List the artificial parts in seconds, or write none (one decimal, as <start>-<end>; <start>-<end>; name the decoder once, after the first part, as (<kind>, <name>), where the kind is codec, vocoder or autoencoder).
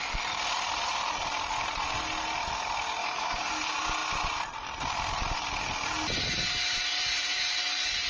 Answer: 3.0-3.5 (autoencoder, DAC-VAE)